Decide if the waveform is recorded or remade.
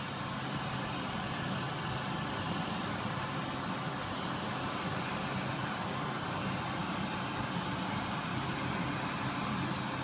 recorded